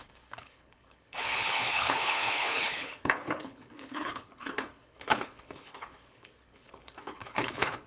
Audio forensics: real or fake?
fake